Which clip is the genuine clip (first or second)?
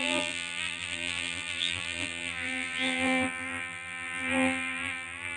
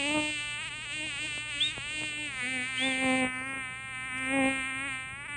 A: second